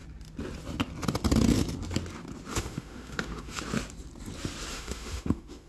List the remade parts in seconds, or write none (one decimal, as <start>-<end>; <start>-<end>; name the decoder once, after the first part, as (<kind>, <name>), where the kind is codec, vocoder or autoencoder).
2.5-3.6 (autoencoder, DAC-VAE); 4.7-5.7